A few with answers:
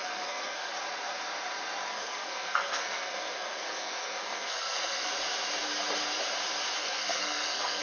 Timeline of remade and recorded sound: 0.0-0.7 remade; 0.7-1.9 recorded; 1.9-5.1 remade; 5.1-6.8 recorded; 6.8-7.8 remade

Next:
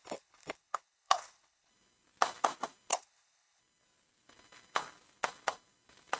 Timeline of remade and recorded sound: 0.0-1.7 remade; 1.7-2.9 recorded; 2.9-3.6 remade; 3.6-6.2 recorded

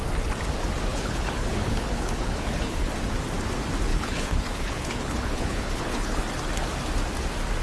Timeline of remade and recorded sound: 0.0-0.9 recorded; 0.9-2.9 remade; 2.9-3.9 recorded; 3.9-6.2 remade; 6.2-7.6 recorded

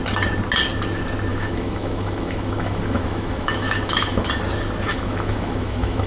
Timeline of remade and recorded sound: 0.0-1.3 recorded; 1.3-4.3 remade; 4.3-4.9 recorded; 4.9-6.1 remade

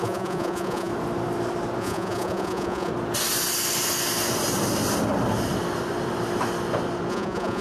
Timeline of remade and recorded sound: 0.0-0.9 remade; 0.9-1.8 recorded; 1.8-2.9 remade; 2.9-7.1 recorded; 7.1-7.6 remade

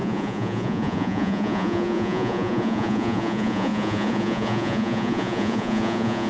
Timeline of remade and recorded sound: 0.0-6.3 remade

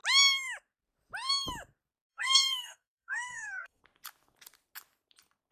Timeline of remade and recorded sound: 0.0-2.1 recorded; 2.1-3.8 remade; 3.8-5.5 recorded

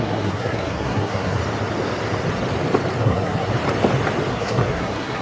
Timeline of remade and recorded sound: 0.0-1.4 remade; 1.4-3.0 recorded; 3.0-3.5 remade; 3.5-4.3 recorded; 4.3-5.2 remade